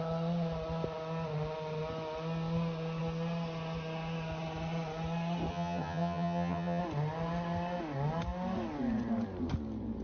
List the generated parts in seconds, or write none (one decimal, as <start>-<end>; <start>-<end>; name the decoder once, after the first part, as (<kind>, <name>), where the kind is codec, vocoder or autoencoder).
5.5-6.8 (vocoder, HiFi-GAN)